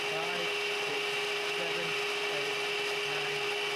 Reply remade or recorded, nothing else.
recorded